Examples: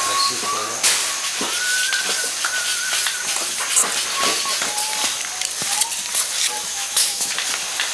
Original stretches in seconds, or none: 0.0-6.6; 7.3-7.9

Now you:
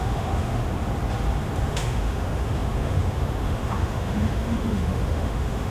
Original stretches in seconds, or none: 0.6-1.7